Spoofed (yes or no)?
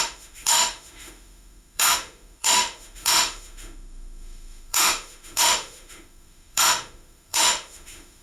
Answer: yes